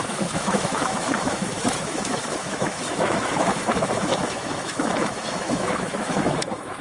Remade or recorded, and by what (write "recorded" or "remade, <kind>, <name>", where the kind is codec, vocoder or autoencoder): remade, autoencoder, DAC-VAE